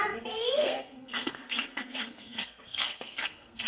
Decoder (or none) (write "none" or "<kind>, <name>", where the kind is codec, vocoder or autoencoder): codec, SNAC